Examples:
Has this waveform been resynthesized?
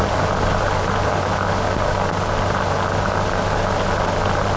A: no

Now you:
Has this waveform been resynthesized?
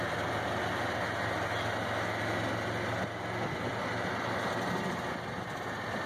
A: no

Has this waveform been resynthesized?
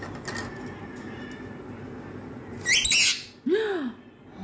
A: no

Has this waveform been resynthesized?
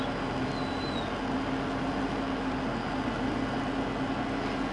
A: no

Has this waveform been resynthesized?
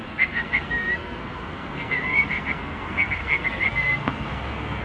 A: yes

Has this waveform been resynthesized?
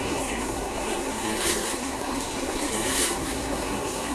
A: yes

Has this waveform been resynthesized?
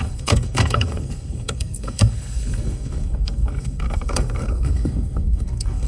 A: yes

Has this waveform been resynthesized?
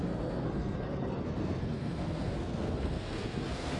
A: yes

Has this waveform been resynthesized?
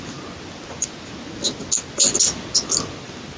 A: no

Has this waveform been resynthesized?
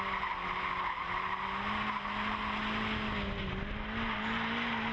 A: no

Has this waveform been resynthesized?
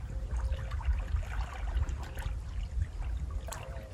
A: no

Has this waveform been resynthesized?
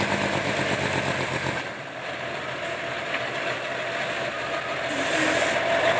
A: no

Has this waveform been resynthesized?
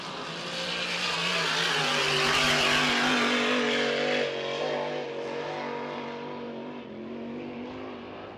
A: no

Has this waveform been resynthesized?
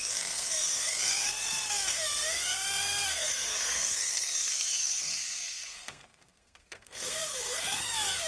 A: yes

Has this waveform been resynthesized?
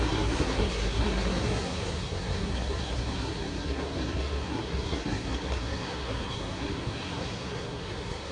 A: yes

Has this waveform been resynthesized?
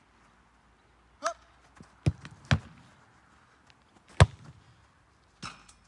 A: no